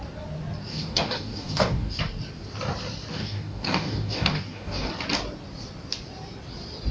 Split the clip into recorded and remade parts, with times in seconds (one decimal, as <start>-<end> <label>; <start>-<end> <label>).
0.0-0.7 recorded; 0.7-2.0 remade; 2.0-3.1 recorded; 3.1-4.9 remade; 4.9-6.9 recorded